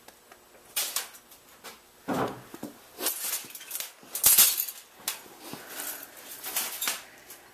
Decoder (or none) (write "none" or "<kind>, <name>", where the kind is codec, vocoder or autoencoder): none